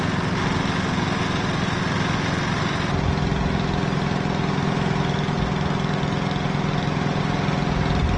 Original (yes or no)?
yes